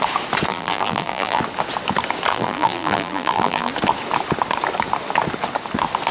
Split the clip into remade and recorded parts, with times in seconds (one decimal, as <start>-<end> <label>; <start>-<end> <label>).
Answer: 0.0-0.5 recorded; 0.5-1.4 remade; 1.4-2.3 recorded; 2.3-3.7 remade; 3.7-6.1 recorded